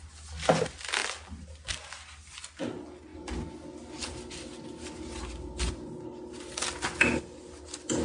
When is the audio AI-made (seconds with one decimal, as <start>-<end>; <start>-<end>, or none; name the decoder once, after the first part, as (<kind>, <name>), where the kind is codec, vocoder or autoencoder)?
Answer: none